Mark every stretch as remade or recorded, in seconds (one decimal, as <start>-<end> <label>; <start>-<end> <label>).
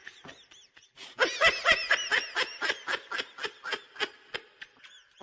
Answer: 0.0-5.2 recorded